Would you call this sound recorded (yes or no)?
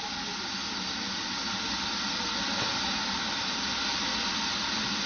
yes